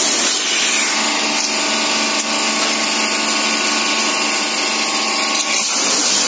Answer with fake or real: real